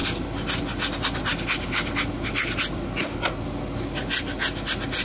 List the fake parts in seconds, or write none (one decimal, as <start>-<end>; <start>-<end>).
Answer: none